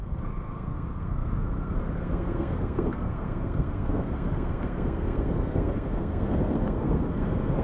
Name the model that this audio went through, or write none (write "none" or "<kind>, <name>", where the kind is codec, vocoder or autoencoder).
codec, SNAC